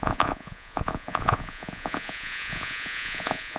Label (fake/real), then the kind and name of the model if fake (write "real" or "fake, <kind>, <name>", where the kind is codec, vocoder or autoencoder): fake, vocoder, Vocos